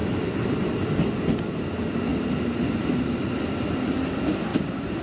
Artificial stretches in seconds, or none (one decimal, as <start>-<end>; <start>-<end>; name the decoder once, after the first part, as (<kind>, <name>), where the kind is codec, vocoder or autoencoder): 0.0-0.8 (vocoder, BigVGAN v2); 2.1-3.1; 4.5-5.0